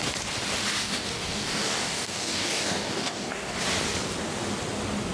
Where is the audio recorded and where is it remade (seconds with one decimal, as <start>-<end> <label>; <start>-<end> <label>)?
0.0-0.8 recorded; 0.8-3.6 remade; 3.6-5.1 recorded